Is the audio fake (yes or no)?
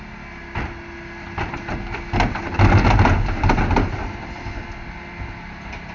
no